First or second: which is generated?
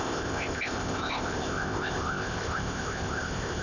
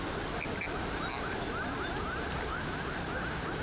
first